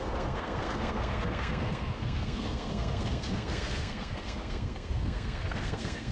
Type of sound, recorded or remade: remade